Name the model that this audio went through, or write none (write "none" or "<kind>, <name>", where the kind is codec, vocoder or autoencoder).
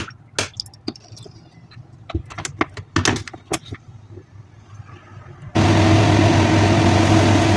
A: none